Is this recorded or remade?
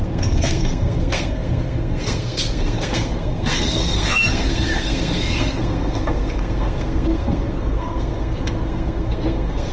remade